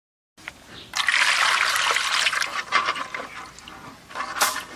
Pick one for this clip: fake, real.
real